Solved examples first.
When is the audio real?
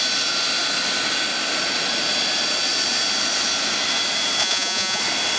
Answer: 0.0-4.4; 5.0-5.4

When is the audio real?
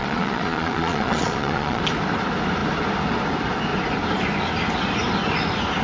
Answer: 1.8-5.8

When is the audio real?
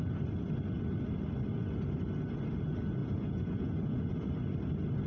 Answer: 0.0-3.0; 4.3-5.1